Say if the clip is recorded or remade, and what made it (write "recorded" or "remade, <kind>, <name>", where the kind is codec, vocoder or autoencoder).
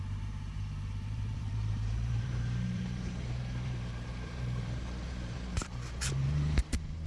remade, vocoder, BigVGAN v2